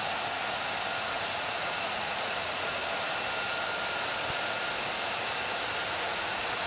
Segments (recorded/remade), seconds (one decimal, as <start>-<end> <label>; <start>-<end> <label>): 0.0-0.4 remade; 0.4-1.0 recorded; 1.0-2.8 remade; 2.8-5.9 recorded; 5.9-6.7 remade